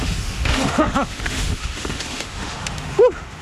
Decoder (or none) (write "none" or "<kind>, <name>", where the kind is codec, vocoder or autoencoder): autoencoder, DAC-VAE